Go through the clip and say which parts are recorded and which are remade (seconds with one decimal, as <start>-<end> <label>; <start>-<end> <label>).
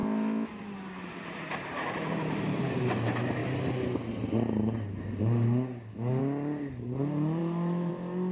0.0-1.1 recorded; 1.1-2.8 remade; 2.8-7.4 recorded; 7.4-7.9 remade; 7.9-8.3 recorded